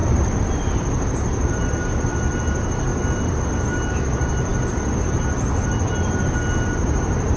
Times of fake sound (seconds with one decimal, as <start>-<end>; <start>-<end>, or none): none

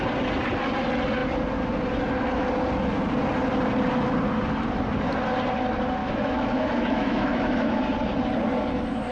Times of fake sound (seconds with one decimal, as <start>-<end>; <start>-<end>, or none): 6.0-7.8

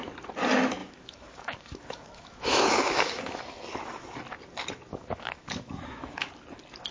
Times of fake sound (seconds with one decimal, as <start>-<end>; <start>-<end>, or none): 0.8-3.4; 4.9-6.3